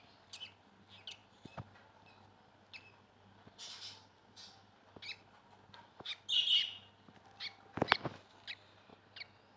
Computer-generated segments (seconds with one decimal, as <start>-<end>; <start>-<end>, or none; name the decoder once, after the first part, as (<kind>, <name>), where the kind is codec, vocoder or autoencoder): none